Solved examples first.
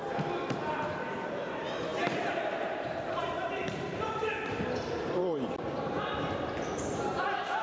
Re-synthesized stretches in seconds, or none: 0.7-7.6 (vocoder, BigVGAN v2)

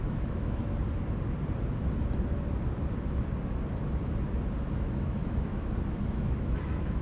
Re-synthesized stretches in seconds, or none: 0.0-0.6 (autoencoder, DAC-VAE); 4.8-5.5; 6.0-7.0

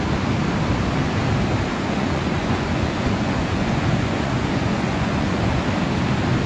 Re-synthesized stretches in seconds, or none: 1.7-5.6 (vocoder, Vocos)

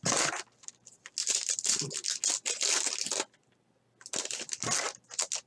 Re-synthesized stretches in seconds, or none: none

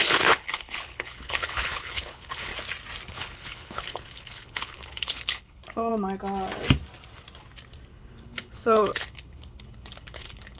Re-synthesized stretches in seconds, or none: 0.0-2.5 (codec, HILCodec); 3.1-5.9; 7.9-10.6

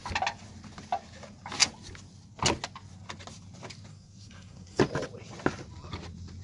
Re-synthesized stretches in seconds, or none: 3.9-4.8 (codec, SNAC)